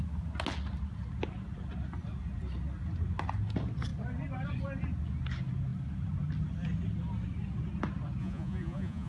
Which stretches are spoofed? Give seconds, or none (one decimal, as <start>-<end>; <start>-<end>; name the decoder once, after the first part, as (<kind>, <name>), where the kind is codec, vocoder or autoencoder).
8.2-9.1 (vocoder, Vocos)